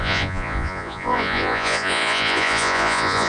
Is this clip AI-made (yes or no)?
yes